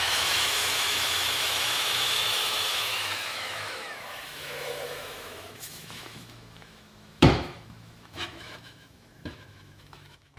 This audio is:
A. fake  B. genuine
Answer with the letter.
A